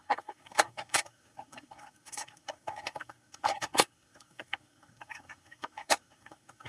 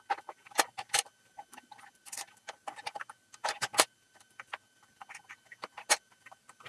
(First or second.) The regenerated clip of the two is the first